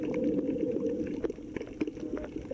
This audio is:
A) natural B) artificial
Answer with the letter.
B